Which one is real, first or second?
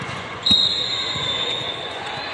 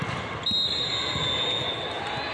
second